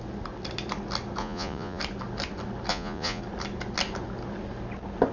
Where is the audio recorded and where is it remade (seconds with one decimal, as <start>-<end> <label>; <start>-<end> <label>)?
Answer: 0.0-1.2 recorded; 1.2-1.8 remade; 1.8-2.7 recorded; 2.7-3.2 remade; 3.2-5.1 recorded